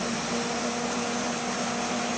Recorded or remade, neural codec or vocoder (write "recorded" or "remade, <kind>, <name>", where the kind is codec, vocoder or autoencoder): recorded